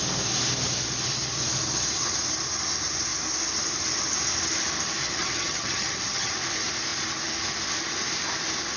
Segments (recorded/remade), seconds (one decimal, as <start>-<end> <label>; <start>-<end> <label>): 0.0-5.0 recorded; 5.0-6.3 remade; 6.3-8.8 recorded